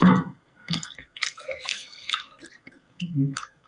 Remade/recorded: remade